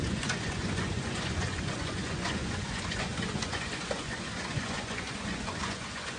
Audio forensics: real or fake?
fake